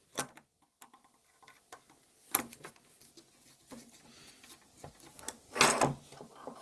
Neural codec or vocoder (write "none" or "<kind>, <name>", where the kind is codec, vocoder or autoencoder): none